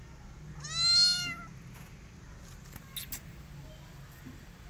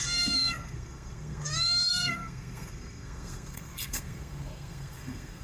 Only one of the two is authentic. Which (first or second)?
first